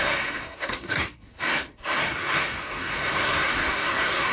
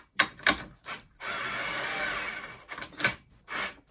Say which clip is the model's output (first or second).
first